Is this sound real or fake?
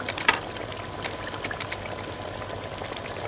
real